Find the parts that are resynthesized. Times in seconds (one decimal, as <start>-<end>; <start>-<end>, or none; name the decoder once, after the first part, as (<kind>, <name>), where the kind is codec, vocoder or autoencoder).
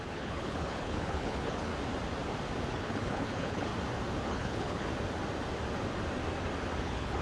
0.0-1.7 (codec, HILCodec); 2.7-3.7; 4.2-4.9; 6.8-7.2